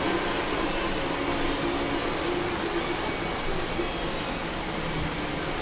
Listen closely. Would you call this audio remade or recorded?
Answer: recorded